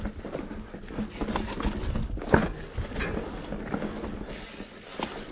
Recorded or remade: recorded